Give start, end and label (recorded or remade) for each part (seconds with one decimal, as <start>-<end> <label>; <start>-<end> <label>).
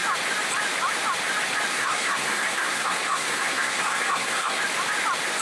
0.0-1.7 recorded; 1.7-4.6 remade; 4.6-5.4 recorded